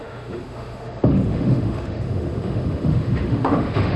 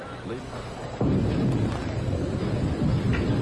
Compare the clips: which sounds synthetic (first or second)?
first